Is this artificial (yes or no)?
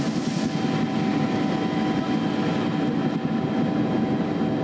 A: no